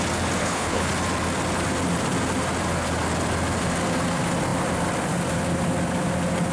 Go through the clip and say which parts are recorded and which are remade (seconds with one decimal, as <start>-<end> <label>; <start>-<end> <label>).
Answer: 0.0-0.4 recorded; 0.4-0.9 remade; 0.9-6.5 recorded

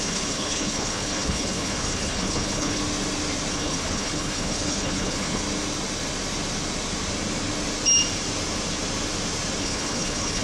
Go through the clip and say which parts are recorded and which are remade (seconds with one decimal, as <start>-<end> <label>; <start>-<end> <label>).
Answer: 0.0-2.8 remade; 2.8-3.5 recorded; 3.5-5.4 remade; 5.4-9.6 recorded; 9.6-10.4 remade

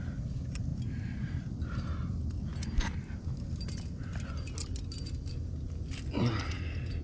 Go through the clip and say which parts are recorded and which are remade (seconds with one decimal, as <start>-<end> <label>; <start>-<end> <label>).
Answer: 0.0-7.0 recorded